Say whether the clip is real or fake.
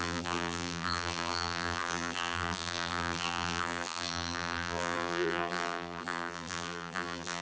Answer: fake